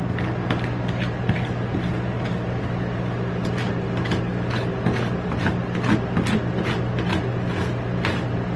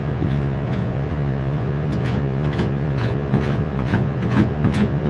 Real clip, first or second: first